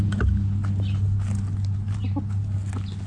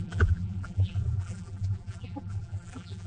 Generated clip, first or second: second